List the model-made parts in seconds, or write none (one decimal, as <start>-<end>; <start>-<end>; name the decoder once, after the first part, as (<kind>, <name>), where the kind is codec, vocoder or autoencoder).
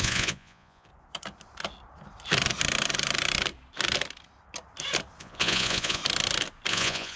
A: 0.0-0.9 (vocoder, Vocos); 5.2-6.0; 6.7-7.2